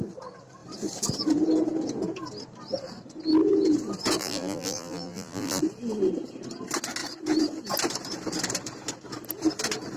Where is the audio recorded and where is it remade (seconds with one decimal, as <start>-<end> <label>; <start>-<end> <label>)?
0.0-4.2 recorded; 4.2-5.6 remade; 5.6-10.0 recorded